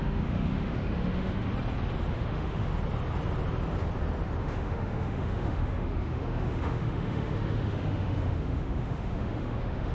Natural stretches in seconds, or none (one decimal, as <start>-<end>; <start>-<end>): 1.5-2.1; 2.7-4.4